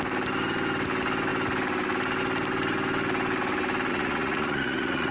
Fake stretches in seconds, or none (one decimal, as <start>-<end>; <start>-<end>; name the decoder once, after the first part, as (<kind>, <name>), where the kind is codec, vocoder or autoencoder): 3.9-5.1 (vocoder, Vocos)